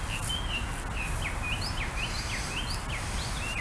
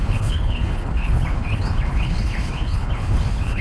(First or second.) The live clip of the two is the first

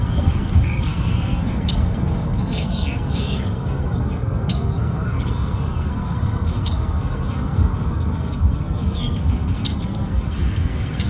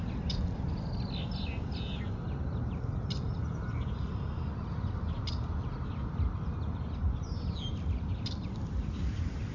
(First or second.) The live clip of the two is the second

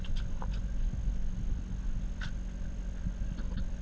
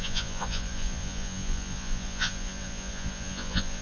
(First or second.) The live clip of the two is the first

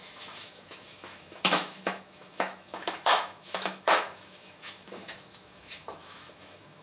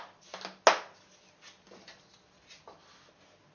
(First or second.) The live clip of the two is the second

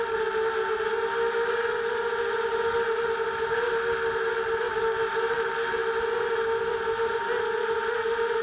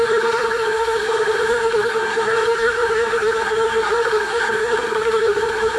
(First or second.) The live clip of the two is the first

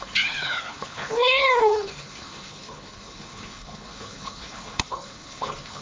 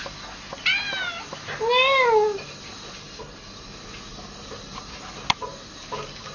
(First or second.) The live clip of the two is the second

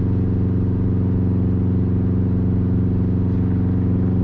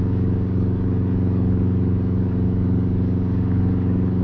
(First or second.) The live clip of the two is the first